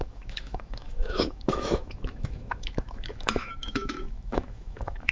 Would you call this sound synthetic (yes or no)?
yes